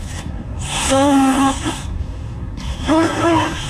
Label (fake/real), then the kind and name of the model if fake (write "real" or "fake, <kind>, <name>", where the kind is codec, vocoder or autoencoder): fake, codec, SNAC